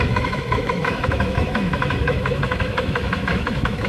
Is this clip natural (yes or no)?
no